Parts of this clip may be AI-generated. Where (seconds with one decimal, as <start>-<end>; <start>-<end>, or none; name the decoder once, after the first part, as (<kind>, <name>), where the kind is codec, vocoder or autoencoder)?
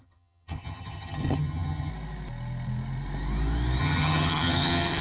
0.0-1.9 (vocoder, HiFi-GAN); 3.8-5.0